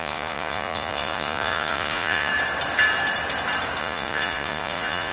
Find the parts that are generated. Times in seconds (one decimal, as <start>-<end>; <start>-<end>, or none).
0.0-2.3; 3.8-5.1